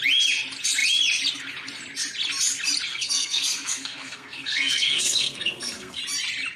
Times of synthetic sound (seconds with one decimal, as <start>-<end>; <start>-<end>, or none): 2.9-6.0